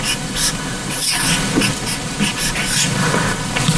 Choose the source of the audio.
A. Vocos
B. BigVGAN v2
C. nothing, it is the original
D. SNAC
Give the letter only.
C